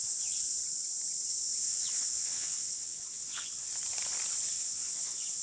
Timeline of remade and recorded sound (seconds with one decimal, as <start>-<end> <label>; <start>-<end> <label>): 0.0-0.6 remade; 0.6-1.3 recorded; 1.3-3.7 remade; 3.7-4.5 recorded; 4.5-5.4 remade